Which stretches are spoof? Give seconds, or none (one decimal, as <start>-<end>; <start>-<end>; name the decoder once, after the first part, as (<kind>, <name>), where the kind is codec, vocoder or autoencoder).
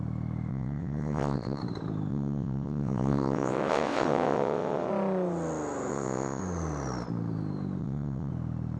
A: 0.5-1.6 (vocoder, WaveNeXt); 2.1-4.9; 5.9-6.4; 7.8-8.3